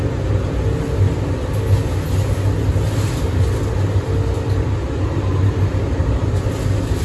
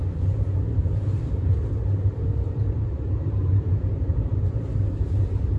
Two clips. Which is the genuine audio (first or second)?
first